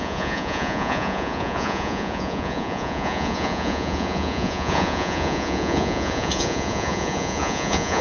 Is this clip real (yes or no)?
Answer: no